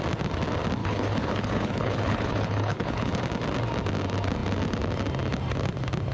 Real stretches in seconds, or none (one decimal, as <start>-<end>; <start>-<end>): 0.0-0.8; 3.1-6.1